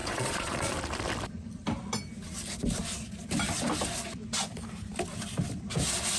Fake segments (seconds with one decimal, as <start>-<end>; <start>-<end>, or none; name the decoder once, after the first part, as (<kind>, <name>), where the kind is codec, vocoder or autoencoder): 0.0-0.7 (vocoder, Vocos)